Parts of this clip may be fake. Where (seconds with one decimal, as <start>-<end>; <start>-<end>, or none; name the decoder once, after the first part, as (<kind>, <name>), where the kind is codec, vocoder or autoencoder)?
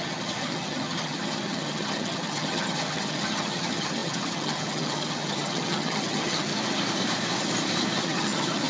0.0-6.5 (vocoder, HiFi-GAN); 8.0-8.7